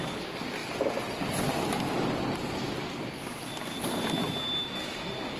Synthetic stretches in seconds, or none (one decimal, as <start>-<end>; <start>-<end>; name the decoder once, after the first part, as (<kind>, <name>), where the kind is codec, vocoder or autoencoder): none